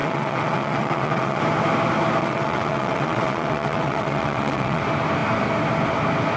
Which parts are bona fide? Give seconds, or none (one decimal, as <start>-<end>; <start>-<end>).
1.4-2.2; 4.8-6.4